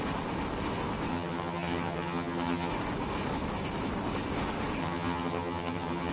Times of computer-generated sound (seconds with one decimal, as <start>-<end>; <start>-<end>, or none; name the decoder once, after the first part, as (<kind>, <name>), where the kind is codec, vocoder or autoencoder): 1.1-2.7 (vocoder, HiFi-GAN); 4.8-6.1